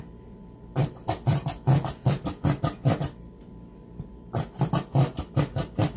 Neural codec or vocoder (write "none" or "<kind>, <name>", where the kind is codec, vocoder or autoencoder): none